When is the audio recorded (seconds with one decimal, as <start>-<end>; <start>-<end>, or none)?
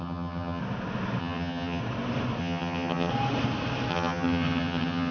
0.6-1.2; 1.8-2.4; 3.1-3.9